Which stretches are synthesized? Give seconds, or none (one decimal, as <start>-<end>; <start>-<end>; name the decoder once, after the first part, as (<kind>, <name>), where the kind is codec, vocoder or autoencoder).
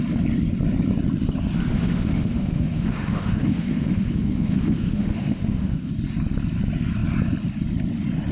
1.7-5.9 (autoencoder, DAC-VAE)